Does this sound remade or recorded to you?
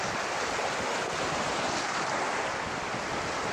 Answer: recorded